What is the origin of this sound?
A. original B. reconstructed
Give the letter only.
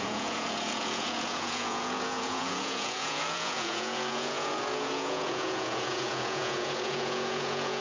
B